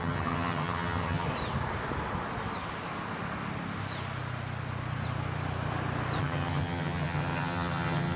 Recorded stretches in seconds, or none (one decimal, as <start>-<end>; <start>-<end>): 1.3-6.2